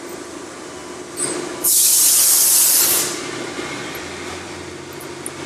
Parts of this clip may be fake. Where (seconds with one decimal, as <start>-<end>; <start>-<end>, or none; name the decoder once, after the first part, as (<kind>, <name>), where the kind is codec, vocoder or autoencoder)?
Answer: none